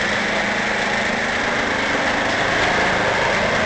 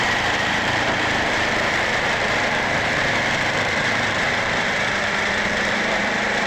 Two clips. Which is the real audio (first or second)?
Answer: first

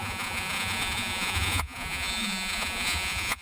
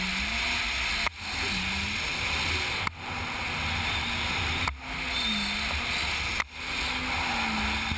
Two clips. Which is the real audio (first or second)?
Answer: second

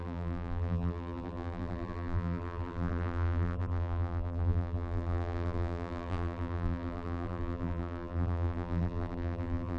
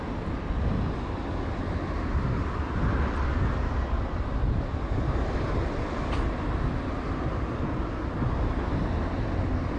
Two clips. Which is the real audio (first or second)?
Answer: second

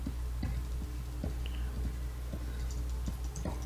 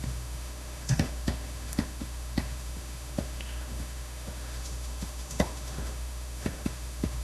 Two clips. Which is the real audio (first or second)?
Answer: first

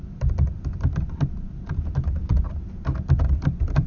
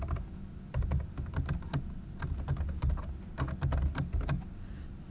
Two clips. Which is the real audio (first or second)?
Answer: second